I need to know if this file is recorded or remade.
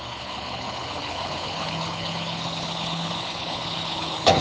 remade